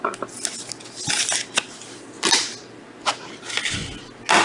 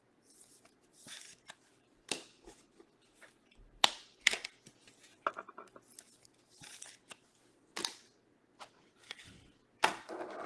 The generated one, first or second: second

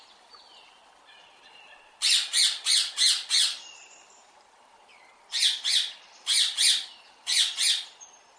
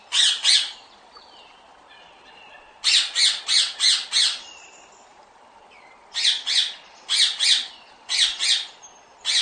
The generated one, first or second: first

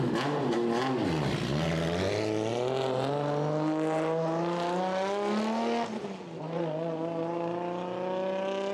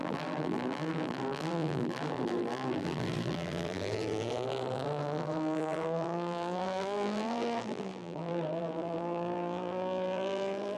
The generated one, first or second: second